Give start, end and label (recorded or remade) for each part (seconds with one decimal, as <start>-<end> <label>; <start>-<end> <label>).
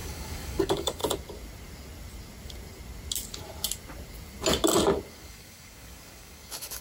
0.0-1.0 remade; 1.0-5.1 recorded; 5.1-6.8 remade